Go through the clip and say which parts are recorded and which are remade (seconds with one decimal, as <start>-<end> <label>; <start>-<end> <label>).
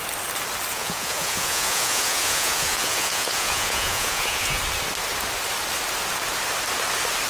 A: 0.0-0.7 recorded; 0.7-4.6 remade; 4.6-7.3 recorded